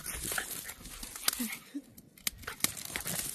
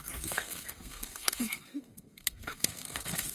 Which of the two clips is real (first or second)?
first